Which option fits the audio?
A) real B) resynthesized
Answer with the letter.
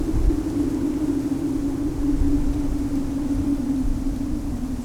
A